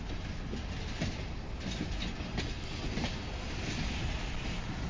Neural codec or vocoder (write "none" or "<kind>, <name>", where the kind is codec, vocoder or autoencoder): none